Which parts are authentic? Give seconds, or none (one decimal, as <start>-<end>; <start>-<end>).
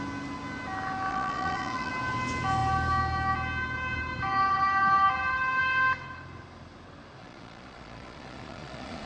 0.0-1.1; 1.9-7.2